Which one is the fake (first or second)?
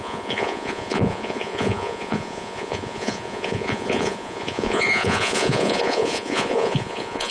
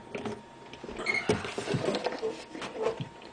first